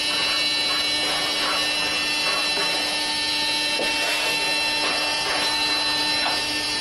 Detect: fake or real real